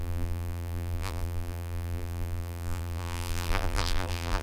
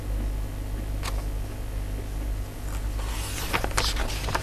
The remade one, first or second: first